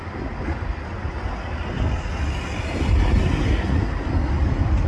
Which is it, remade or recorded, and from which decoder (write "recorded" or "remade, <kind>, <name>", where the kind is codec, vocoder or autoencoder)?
recorded